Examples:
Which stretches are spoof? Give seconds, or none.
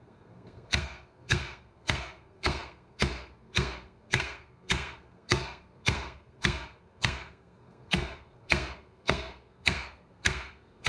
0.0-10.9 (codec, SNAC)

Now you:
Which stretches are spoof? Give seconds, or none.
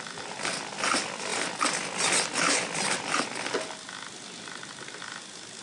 none